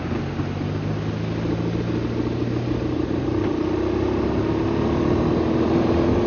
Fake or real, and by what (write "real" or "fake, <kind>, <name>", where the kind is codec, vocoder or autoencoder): real